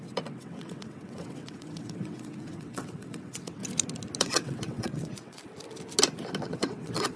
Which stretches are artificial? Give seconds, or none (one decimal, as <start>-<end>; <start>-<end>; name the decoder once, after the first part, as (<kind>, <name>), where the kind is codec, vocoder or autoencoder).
0.0-3.6 (vocoder, WaveNeXt); 4.2-5.4; 6.4-7.2